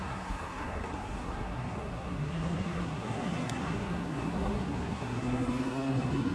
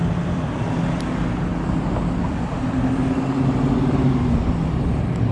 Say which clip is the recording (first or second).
second